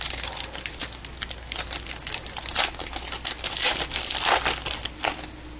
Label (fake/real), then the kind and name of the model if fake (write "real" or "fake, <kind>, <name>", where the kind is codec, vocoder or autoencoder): real